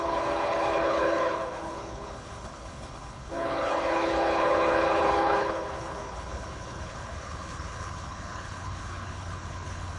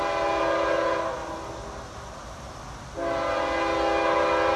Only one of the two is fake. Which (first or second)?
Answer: first